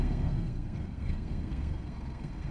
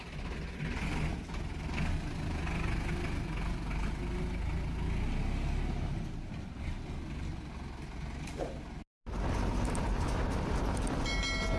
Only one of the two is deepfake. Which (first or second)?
first